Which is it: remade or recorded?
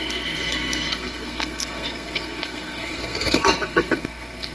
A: remade